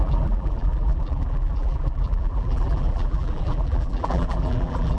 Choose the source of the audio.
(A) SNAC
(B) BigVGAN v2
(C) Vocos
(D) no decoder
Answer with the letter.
B